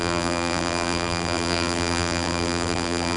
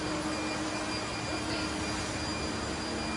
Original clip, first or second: second